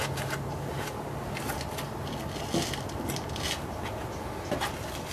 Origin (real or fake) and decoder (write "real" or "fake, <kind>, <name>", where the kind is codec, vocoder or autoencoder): real